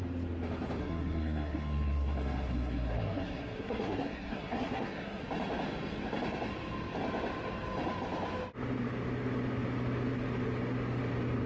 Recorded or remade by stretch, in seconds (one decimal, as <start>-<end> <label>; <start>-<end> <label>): 0.0-0.8 recorded; 0.8-5.2 remade; 5.2-11.5 recorded